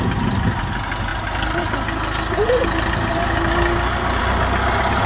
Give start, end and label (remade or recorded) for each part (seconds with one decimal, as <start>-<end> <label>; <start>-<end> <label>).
0.0-5.1 recorded